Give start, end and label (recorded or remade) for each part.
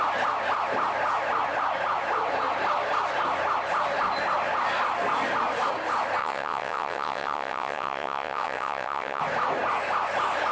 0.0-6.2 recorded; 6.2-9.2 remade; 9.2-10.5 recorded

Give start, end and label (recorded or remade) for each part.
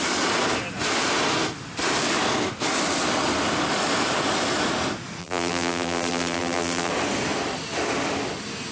0.0-5.2 recorded; 5.2-6.9 remade; 6.9-8.7 recorded